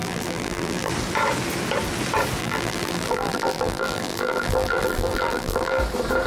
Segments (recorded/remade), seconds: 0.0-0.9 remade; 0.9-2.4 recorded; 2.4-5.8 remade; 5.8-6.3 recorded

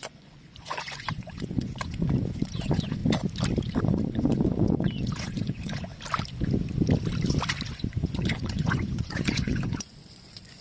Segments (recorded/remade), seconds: 0.0-3.0 remade; 3.0-3.8 recorded; 3.8-5.9 remade; 5.9-7.7 recorded; 7.7-10.6 remade